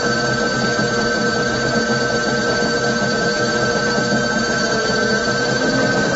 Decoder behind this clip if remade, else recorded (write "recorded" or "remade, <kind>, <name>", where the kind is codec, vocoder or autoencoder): recorded